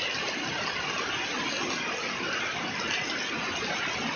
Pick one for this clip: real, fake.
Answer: real